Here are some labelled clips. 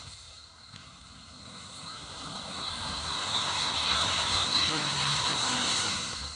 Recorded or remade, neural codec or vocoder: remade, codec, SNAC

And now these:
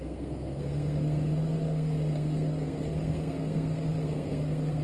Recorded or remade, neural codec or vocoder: remade, codec, SNAC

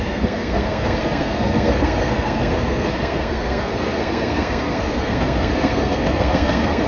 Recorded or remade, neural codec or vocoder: remade, codec, SNAC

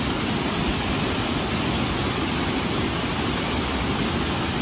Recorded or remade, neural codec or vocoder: recorded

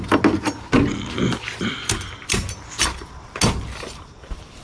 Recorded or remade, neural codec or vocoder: recorded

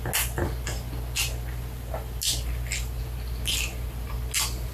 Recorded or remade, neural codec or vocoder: recorded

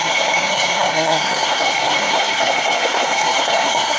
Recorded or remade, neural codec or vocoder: remade, codec, SNAC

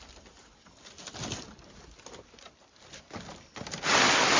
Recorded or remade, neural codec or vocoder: recorded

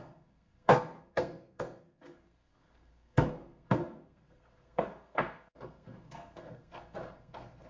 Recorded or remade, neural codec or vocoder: remade, codec, SNAC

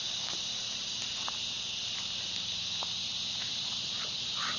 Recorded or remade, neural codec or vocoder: recorded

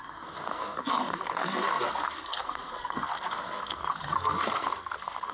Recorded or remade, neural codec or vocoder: remade, codec, SNAC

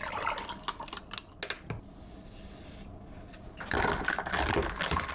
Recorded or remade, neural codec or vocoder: recorded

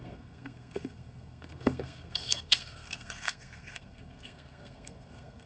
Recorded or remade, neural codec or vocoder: remade, codec, SNAC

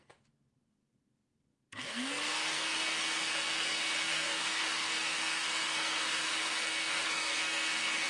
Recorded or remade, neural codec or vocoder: remade, codec, SNAC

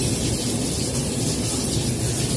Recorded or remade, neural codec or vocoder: recorded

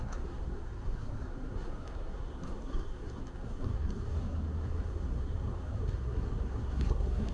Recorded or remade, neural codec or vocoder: remade, codec, SNAC